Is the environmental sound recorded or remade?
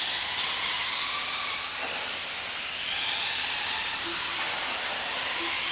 recorded